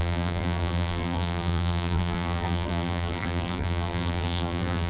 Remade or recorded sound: remade